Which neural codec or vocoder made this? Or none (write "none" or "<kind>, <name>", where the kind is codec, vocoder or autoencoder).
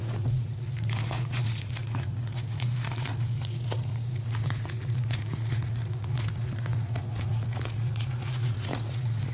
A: vocoder, Vocos